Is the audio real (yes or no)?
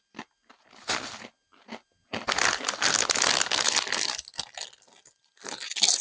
yes